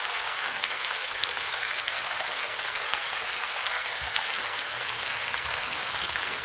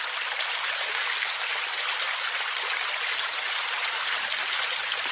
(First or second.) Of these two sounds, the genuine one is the second